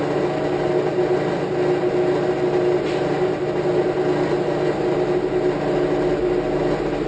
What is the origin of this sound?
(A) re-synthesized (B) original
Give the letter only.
B